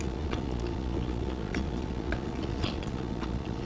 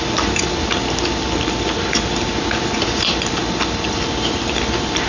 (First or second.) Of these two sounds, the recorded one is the second